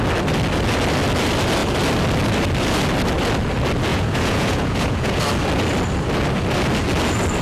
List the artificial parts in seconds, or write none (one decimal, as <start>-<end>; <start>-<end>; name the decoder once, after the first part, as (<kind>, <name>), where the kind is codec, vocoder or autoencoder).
3.9-5.2 (vocoder, Vocos)